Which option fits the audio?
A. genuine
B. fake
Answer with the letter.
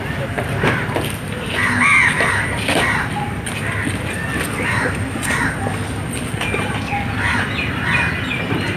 A